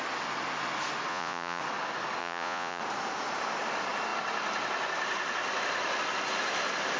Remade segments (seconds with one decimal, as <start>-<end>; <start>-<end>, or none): 1.1-1.6; 2.2-2.8